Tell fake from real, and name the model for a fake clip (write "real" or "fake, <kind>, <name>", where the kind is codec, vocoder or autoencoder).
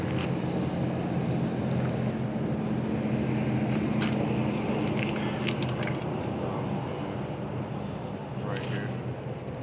real